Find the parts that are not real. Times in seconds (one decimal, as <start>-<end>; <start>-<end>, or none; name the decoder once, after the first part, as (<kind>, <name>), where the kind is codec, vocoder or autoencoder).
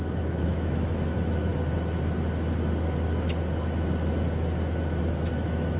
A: 0.0-1.5 (autoencoder, DAC-VAE); 5.0-5.8